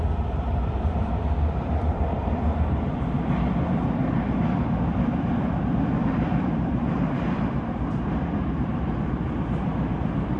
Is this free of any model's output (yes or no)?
no